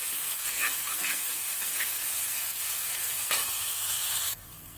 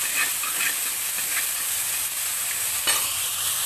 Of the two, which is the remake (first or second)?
first